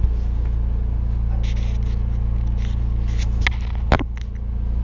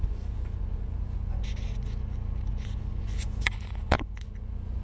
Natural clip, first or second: first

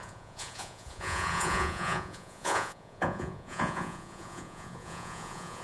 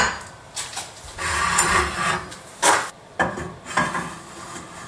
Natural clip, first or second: second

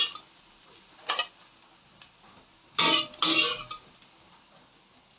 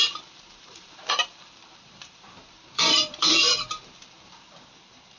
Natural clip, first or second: first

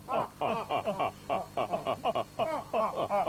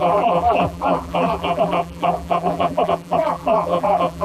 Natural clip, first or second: first